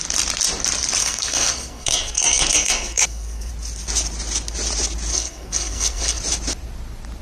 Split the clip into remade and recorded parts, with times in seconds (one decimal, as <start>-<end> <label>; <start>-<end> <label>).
0.0-1.0 recorded; 1.0-3.5 remade; 3.5-5.1 recorded; 5.1-6.2 remade; 6.2-7.2 recorded